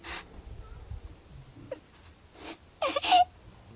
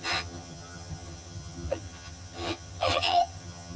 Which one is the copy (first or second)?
second